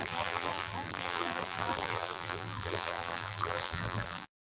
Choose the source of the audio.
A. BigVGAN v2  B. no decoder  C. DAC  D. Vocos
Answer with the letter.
A